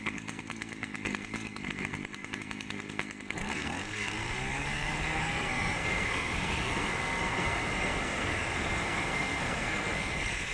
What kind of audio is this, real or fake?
fake